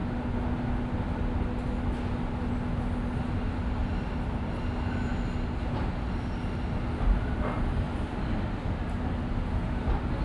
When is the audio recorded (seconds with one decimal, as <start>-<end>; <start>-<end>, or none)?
0.0-3.8; 4.6-10.2